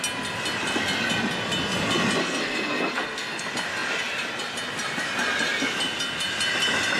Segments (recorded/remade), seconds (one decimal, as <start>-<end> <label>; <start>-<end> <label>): 0.0-2.2 recorded; 2.2-3.4 remade; 3.4-7.0 recorded